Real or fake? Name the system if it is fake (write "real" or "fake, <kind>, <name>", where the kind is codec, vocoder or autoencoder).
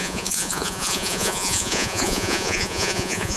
fake, vocoder, Vocos